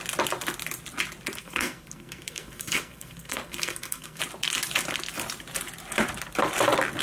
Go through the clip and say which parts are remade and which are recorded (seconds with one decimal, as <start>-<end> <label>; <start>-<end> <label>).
0.0-1.4 recorded; 1.4-4.2 remade; 4.2-7.0 recorded